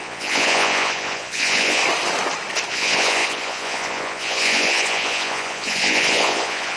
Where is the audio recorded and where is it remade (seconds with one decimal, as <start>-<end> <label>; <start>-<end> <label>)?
0.0-1.8 remade; 1.8-2.7 recorded; 2.7-6.8 remade